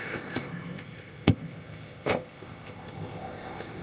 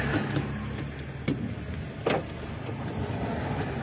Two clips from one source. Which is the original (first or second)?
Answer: second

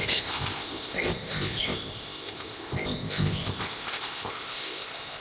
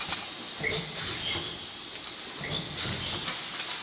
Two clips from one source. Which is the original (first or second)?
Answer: second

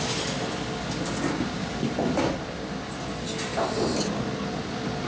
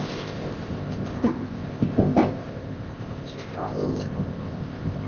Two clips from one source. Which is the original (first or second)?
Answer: first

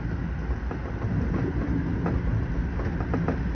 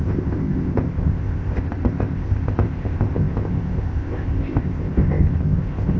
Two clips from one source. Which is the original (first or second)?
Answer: first